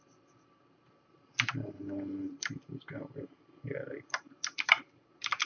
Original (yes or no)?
no